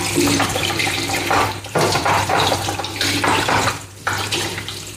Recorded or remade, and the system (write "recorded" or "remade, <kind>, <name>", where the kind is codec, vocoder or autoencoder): remade, vocoder, BigVGAN v2